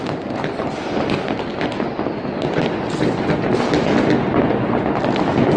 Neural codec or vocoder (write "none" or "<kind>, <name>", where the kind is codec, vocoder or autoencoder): none